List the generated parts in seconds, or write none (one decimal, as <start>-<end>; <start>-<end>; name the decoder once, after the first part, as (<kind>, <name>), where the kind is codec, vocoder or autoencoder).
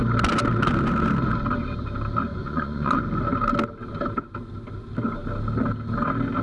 2.3-3.0 (vocoder, Vocos)